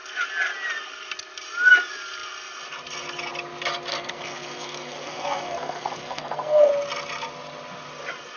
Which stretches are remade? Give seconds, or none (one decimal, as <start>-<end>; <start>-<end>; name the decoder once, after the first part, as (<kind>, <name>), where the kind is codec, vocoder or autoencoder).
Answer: 3.9-6.7 (codec, SNAC)